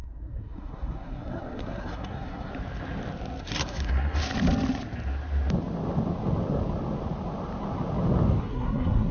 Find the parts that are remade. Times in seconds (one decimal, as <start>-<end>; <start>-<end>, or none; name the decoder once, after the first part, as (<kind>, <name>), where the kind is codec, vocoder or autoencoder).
0.0-2.5 (codec, SNAC); 3.4-4.2; 8.4-9.1